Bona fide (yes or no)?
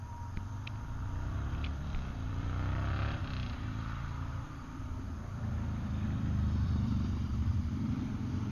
no